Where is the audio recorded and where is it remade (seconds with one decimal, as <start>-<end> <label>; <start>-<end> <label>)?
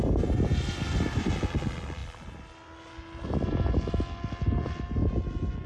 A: 0.0-5.7 recorded